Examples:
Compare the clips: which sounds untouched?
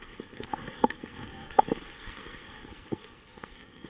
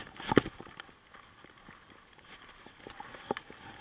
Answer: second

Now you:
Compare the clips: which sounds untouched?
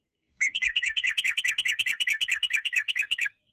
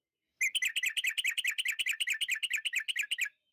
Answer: second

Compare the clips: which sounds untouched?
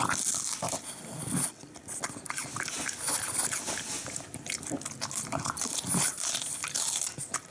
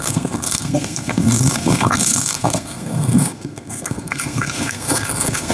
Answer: first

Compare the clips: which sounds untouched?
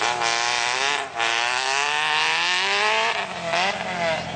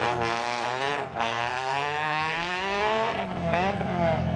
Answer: first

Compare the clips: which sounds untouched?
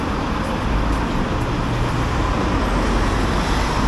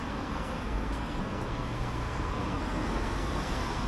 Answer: first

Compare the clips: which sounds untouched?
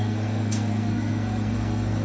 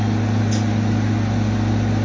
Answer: second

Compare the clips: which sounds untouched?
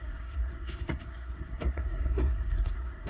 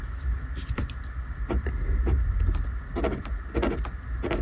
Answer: second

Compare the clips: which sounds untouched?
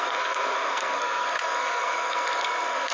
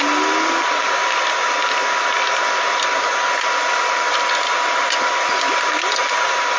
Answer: second